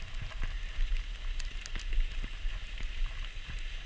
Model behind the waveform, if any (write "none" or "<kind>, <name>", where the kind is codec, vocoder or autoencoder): none